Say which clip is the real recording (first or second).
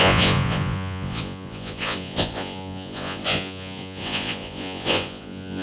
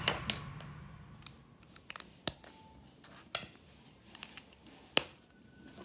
second